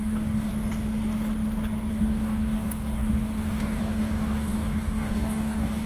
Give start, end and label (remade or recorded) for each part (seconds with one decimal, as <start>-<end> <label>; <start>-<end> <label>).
0.0-0.5 remade; 0.5-1.9 recorded; 1.9-5.9 remade